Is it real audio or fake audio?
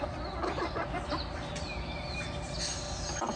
real